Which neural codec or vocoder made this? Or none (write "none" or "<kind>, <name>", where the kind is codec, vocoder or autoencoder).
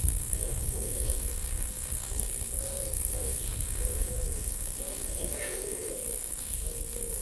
codec, SNAC